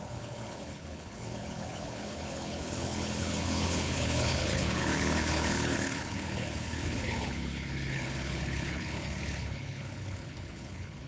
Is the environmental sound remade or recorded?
remade